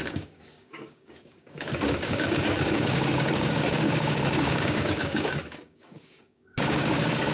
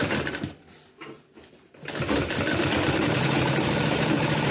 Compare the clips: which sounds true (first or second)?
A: second